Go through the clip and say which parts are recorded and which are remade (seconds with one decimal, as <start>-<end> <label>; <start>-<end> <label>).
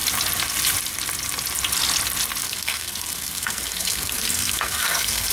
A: 0.0-2.4 recorded; 2.4-5.3 remade